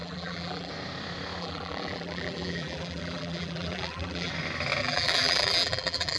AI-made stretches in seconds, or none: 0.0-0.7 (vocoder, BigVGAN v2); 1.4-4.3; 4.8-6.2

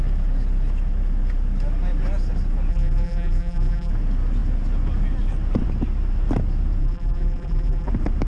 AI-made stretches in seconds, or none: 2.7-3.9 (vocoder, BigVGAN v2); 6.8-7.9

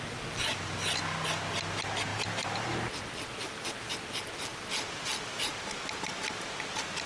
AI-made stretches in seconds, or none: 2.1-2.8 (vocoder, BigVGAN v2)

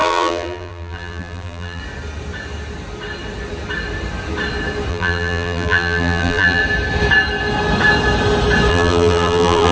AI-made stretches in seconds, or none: 0.0-1.8 (vocoder, BigVGAN v2); 4.9-6.6; 8.7-9.7

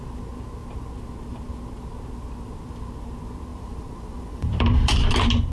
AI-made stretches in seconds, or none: 3.5-5.1 (vocoder, BigVGAN v2)

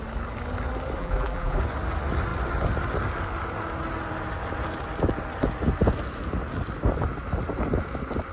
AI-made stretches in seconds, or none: 1.0-1.6 (vocoder, BigVGAN v2)

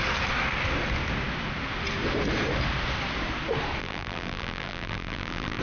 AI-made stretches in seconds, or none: 3.8-5.6 (vocoder, BigVGAN v2)

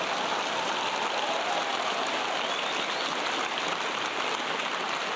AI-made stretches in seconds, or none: 1.7-2.3 (vocoder, BigVGAN v2)